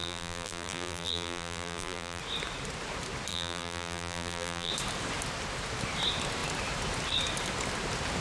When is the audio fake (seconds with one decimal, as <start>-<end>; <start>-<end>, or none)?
0.0-2.2; 3.3-4.7